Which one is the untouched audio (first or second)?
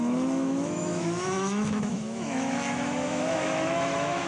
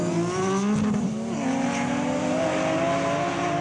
second